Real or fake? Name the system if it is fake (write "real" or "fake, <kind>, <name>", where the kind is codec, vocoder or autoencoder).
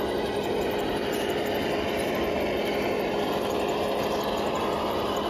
real